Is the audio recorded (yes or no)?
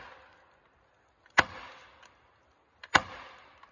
yes